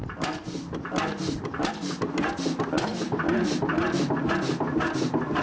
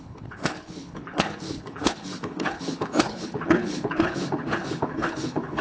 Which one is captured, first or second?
first